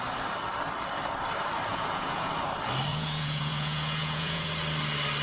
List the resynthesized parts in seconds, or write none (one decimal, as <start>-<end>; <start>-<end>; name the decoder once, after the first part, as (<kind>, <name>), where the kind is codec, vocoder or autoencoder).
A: 1.7-2.3 (vocoder, Vocos); 2.9-4.5